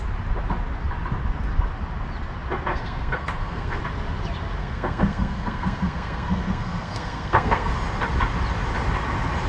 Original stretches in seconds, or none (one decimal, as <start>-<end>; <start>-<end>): 0.0-2.7; 3.8-4.6; 7.7-9.5

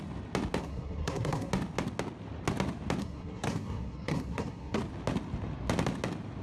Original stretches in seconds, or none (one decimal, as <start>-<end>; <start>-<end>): 0.0-0.6; 1.5-3.0; 4.8-6.4

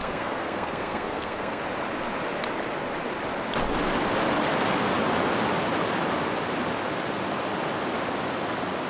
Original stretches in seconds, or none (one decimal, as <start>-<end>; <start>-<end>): 1.6-8.9

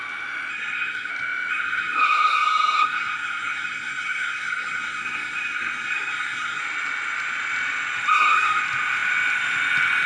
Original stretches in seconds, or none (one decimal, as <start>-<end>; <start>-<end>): 0.0-0.5; 1.1-1.5; 6.6-8.1; 8.6-10.1

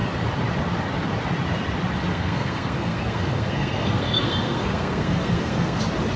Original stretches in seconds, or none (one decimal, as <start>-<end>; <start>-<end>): 0.0-2.1; 5.8-6.2